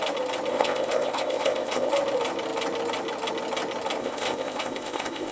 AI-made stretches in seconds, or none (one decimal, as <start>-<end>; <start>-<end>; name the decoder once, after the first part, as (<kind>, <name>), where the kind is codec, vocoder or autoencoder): 0.5-1.9 (codec, ZipCodec); 4.0-5.3